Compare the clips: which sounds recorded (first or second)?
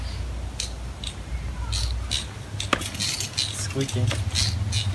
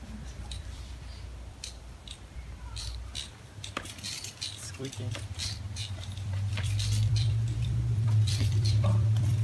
first